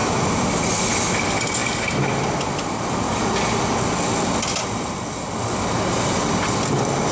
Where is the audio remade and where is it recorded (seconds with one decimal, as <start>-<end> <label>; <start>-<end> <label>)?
0.0-7.1 recorded